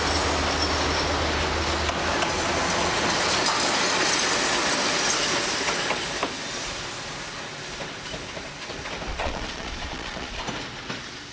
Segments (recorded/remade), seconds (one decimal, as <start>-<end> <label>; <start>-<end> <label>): 0.0-9.1 recorded; 9.1-10.4 remade; 10.4-11.3 recorded

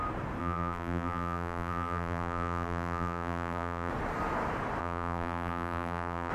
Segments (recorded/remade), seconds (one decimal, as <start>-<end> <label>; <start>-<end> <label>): 0.0-0.4 recorded; 0.4-3.9 remade; 3.9-4.8 recorded; 4.8-6.3 remade

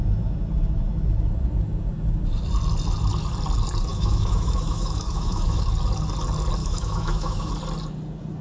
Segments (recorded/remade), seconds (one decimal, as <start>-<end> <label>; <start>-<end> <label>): 0.0-3.9 recorded; 3.9-5.6 remade; 5.6-6.6 recorded; 6.6-7.5 remade; 7.5-8.4 recorded

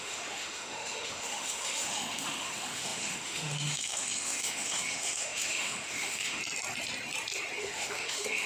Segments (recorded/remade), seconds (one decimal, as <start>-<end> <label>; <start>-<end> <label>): 0.0-6.4 remade; 6.4-7.6 recorded; 7.6-8.5 remade

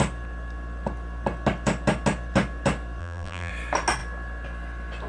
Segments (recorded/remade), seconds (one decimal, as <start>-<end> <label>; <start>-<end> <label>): 0.0-3.0 recorded; 3.0-3.5 remade; 3.5-5.1 recorded